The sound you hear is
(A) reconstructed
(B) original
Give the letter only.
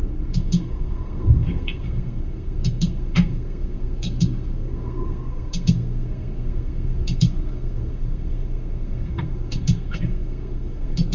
A